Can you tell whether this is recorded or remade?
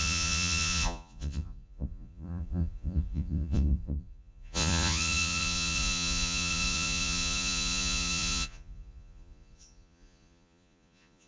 remade